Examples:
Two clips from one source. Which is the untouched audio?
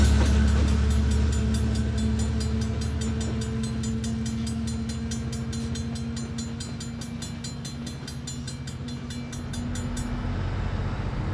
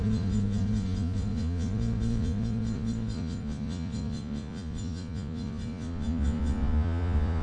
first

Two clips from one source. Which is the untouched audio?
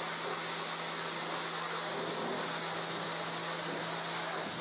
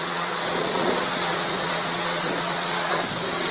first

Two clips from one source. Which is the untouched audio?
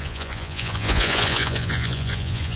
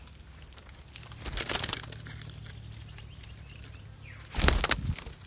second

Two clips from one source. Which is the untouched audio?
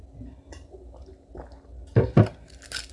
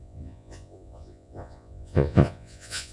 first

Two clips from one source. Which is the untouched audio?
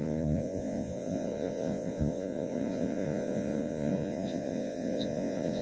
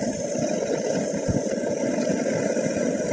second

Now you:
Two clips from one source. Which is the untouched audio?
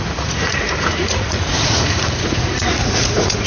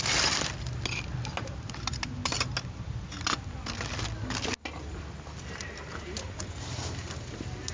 second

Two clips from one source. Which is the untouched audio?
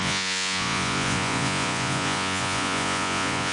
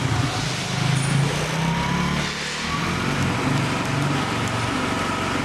second